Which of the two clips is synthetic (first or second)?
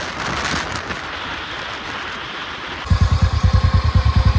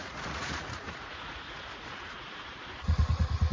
second